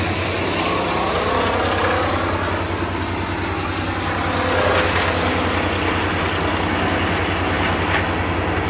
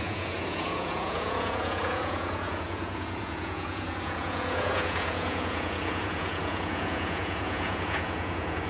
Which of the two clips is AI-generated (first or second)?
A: second